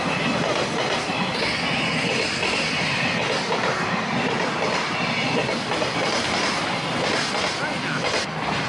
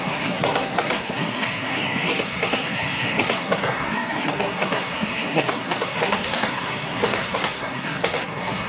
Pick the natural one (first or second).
first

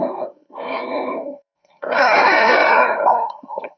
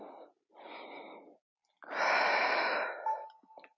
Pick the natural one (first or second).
second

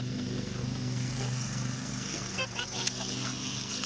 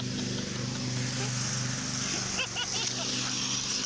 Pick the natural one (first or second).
second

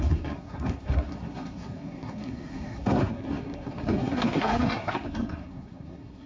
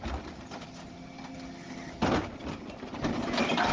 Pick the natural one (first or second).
second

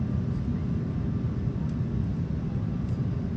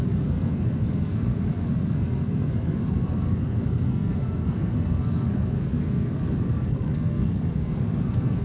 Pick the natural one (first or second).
first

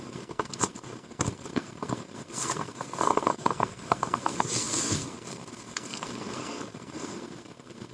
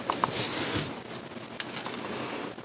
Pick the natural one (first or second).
second